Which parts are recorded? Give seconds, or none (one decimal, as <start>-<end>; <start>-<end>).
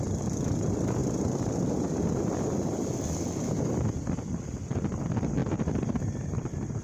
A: 0.0-6.8